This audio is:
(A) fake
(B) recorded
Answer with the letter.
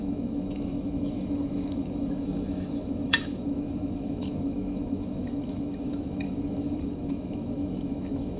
A